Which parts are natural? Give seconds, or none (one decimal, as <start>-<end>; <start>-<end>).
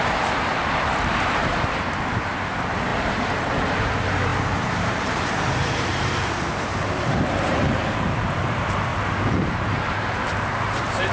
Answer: 8.9-10.0